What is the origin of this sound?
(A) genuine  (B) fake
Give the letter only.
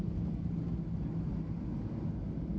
A